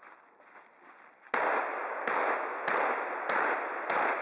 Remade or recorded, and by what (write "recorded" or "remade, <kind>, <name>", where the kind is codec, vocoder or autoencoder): recorded